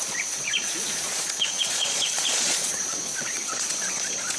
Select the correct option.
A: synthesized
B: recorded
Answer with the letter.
A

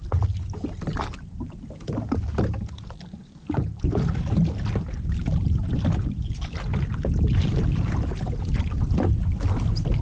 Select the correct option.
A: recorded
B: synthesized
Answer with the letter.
A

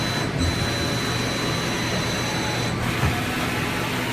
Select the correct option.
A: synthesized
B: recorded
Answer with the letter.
B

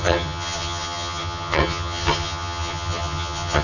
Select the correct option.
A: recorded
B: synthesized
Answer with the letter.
B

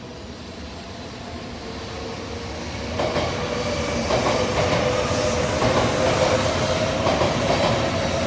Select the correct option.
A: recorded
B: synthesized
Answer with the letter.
A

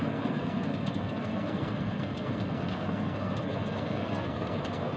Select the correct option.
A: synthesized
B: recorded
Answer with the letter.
A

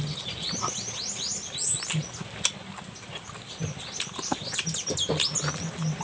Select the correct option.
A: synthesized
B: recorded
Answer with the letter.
B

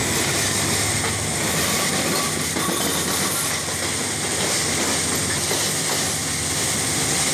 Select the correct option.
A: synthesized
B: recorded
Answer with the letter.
B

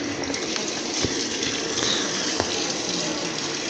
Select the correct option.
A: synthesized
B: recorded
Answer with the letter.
B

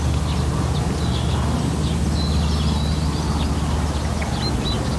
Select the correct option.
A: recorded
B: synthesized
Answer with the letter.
A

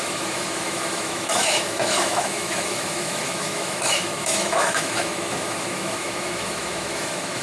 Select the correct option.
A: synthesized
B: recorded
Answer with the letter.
A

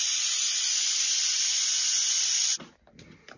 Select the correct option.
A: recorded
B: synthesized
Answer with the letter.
A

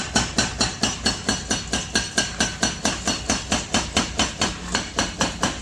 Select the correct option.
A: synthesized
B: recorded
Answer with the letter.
B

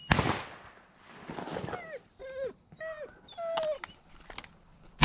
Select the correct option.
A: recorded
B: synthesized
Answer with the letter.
A